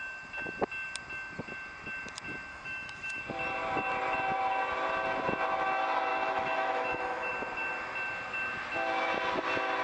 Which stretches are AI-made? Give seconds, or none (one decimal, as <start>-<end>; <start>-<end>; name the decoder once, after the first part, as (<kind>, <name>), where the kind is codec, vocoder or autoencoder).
2.5-3.2 (autoencoder, DAC-VAE); 6.1-7.3